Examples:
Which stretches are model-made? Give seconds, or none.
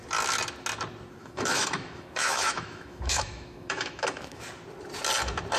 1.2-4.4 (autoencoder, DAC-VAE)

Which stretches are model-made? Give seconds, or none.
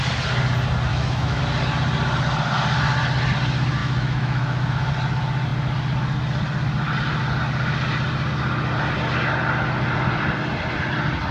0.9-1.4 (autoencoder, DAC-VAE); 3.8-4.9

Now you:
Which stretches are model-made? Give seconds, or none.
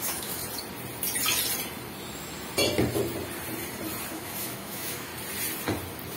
0.0-0.4 (autoencoder, DAC-VAE); 4.1-5.1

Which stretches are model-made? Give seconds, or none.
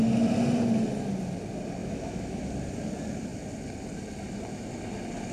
1.8-2.4 (autoencoder, DAC-VAE)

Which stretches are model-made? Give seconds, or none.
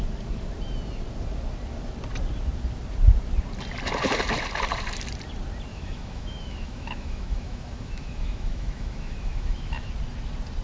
5.7-9.9 (autoencoder, DAC-VAE)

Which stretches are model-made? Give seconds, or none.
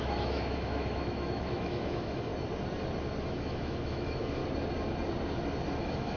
0.0-2.3 (autoencoder, DAC-VAE); 3.2-4.4; 5.8-6.2